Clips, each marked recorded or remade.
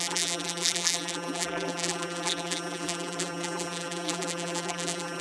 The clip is remade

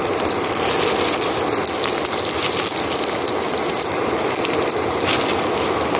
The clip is recorded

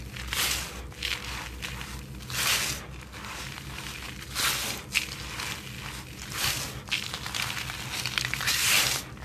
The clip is recorded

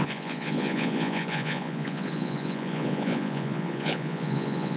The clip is remade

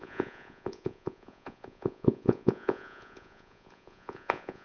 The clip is remade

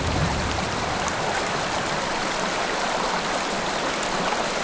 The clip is recorded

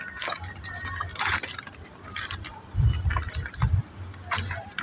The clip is recorded